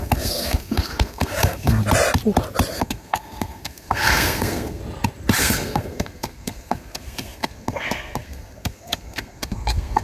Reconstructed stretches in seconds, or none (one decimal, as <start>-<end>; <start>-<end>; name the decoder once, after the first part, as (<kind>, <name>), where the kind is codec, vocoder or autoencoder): 0.0-1.8 (codec, SNAC); 2.7-4.8; 5.4-10.0